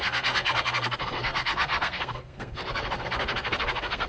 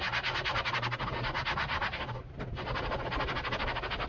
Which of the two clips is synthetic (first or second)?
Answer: first